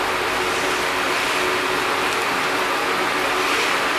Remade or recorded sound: recorded